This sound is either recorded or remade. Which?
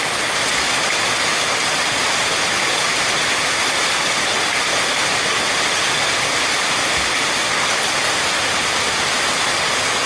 recorded